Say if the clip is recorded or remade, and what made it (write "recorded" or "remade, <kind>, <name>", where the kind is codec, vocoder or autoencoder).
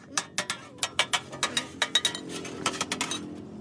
recorded